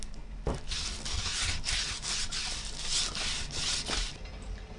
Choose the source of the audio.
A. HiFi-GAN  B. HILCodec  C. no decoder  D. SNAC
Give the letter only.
C